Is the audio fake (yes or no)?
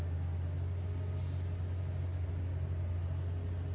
no